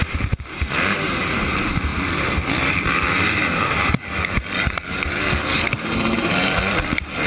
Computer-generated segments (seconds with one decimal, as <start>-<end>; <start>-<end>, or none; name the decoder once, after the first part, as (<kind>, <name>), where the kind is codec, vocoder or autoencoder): 0.0-7.3 (vocoder, BigVGAN v2)